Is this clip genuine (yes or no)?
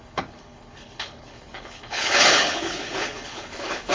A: no